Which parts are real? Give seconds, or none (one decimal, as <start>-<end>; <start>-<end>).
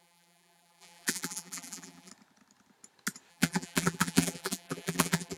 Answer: 2.1-3.3